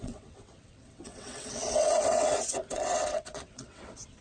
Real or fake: fake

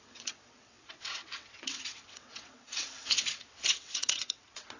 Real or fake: fake